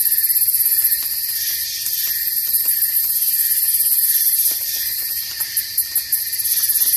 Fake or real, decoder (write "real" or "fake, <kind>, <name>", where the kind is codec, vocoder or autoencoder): fake, vocoder, BigVGAN v2